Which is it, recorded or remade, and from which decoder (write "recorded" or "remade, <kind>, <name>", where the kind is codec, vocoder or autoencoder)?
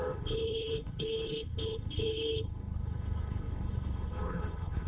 remade, codec, HILCodec